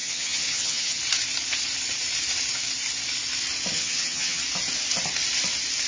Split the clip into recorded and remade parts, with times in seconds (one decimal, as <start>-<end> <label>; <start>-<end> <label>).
0.0-1.0 remade; 1.0-3.7 recorded; 3.7-4.4 remade; 4.4-5.9 recorded